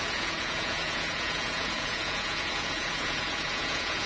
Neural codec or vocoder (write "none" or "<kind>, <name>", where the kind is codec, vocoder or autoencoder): vocoder, Vocos